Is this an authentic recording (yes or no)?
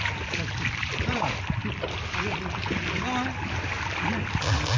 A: yes